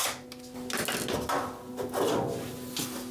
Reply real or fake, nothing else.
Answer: real